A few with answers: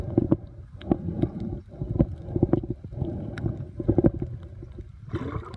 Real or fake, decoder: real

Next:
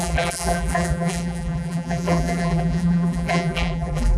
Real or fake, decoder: fake, vocoder, BigVGAN v2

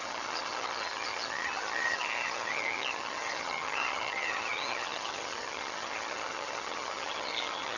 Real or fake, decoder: fake, vocoder, HiFi-GAN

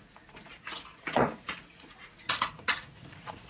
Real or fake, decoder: fake, vocoder, Vocos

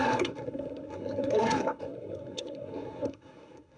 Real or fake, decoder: fake, codec, SNAC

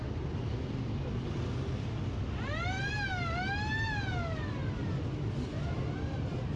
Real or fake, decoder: real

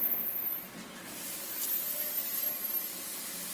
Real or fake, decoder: real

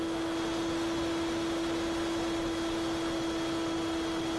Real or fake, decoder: real